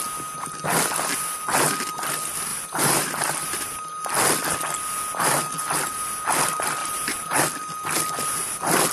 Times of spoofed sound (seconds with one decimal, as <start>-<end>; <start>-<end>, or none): 2.5-4.0; 6.8-7.4